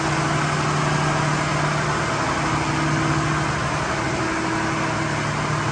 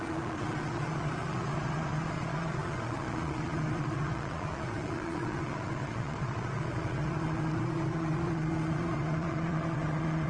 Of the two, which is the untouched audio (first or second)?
first